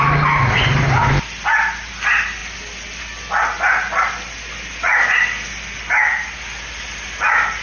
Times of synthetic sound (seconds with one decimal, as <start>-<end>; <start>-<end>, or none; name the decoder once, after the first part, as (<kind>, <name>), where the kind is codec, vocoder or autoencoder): none